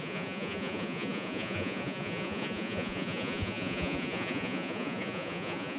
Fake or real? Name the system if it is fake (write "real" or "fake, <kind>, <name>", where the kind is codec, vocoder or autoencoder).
fake, vocoder, Vocos